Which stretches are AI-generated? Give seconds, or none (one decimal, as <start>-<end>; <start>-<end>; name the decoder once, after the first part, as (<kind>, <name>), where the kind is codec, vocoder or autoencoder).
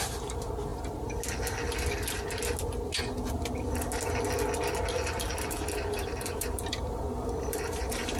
0.0-0.7 (vocoder, BigVGAN v2); 5.5-8.2